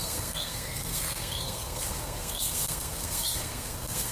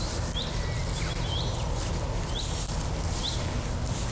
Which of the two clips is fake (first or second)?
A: first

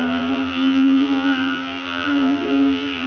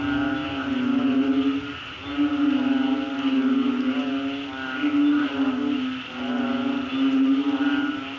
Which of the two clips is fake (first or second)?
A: first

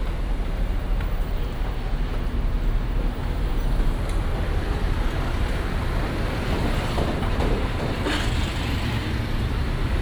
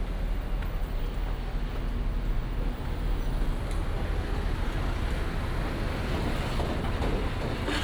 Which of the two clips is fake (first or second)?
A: first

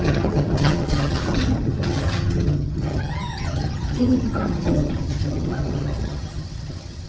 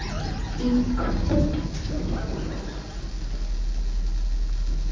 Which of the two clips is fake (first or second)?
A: first